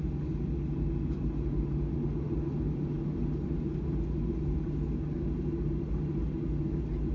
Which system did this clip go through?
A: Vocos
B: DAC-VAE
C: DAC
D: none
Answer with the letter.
D